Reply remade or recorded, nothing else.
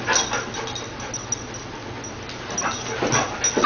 recorded